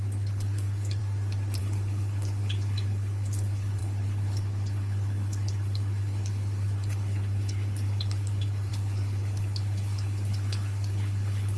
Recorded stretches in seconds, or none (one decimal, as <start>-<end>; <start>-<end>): 1.0-1.6

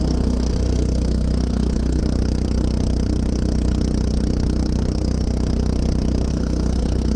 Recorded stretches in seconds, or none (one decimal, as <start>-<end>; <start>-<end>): 2.0-6.3

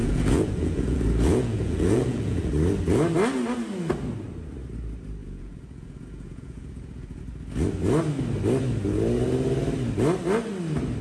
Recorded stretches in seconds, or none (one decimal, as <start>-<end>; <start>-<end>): 2.5-5.2; 7.2-11.0

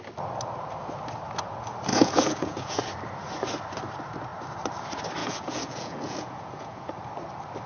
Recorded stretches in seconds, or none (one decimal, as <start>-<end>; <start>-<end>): 0.0-1.9; 2.8-5.2; 6.9-7.7

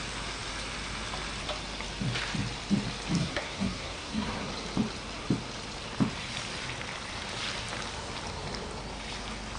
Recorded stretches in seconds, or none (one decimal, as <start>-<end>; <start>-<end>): 0.0-3.2; 4.5-9.6

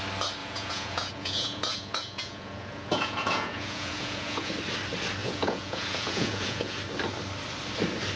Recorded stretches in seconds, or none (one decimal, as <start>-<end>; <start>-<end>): 0.0-0.4; 4.5-5.2; 6.8-8.2